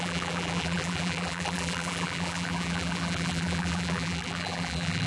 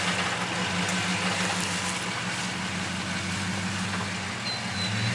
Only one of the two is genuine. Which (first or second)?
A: second